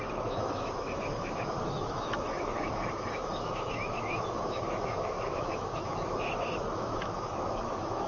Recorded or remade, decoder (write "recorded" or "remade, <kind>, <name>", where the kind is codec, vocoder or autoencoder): remade, autoencoder, DAC-VAE